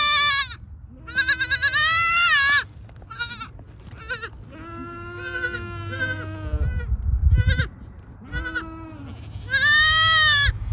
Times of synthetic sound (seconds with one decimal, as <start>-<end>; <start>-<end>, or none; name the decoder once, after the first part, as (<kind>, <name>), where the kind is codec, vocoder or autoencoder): none